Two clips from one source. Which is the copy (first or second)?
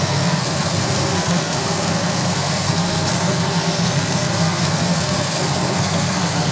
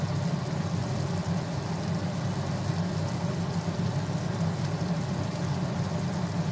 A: first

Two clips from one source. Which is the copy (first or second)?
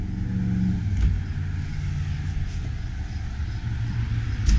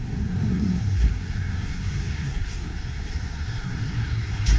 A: second